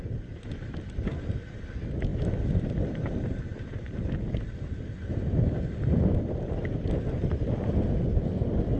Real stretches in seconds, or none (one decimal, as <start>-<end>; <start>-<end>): 0.0-3.5; 7.0-8.8